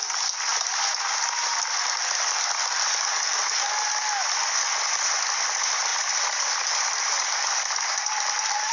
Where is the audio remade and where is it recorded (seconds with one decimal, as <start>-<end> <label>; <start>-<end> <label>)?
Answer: 0.0-5.9 recorded; 5.9-8.7 remade